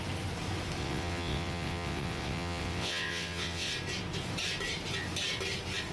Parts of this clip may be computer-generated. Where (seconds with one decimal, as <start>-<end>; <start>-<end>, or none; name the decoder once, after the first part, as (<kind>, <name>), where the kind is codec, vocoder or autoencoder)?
0.8-3.7 (vocoder, WaveNeXt)